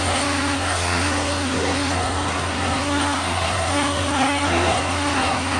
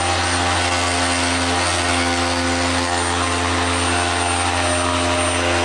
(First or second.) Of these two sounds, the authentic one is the second